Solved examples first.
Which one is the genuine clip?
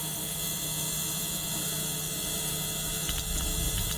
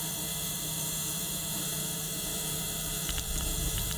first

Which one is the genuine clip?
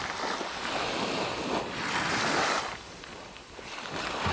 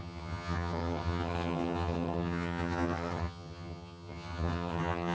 first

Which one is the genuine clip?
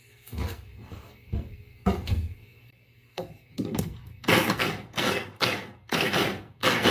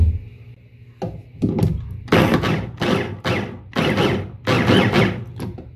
second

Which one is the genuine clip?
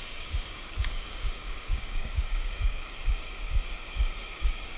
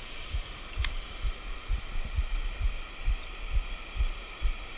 second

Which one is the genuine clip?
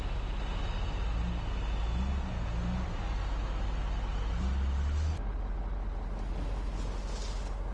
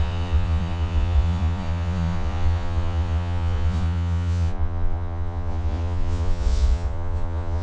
first